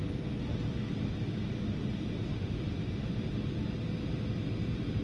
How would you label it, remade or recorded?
recorded